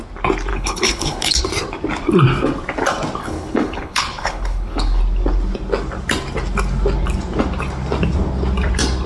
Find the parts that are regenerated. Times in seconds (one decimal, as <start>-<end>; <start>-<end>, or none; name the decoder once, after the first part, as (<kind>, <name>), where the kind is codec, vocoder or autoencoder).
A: 0.5-1.4 (codec, HILCodec); 3.2-5.0